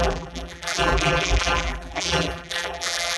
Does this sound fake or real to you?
fake